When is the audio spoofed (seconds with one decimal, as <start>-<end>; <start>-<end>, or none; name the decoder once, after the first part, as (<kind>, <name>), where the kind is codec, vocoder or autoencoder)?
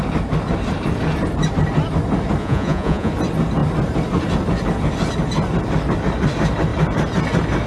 2.4-3.1 (vocoder, Vocos)